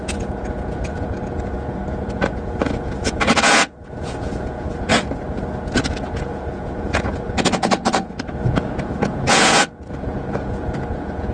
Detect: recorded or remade remade